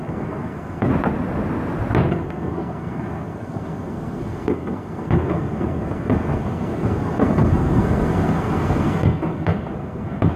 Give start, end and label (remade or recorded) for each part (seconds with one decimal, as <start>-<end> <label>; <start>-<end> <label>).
0.0-0.9 remade; 0.9-2.1 recorded; 2.1-10.4 remade